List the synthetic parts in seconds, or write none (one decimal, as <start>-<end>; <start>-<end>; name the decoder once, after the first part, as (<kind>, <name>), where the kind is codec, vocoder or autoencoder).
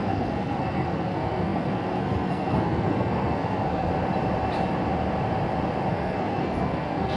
0.0-3.9 (codec, SNAC); 5.9-7.2